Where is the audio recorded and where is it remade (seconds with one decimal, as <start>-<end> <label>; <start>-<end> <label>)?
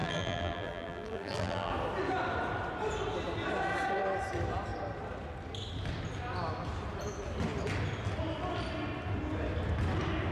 0.0-1.7 remade; 1.7-10.3 recorded